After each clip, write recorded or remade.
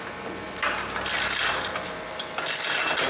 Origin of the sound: recorded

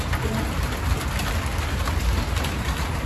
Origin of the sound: recorded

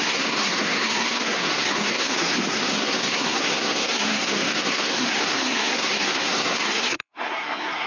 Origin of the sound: remade